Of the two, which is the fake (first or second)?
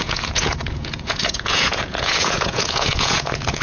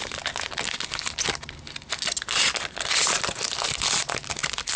first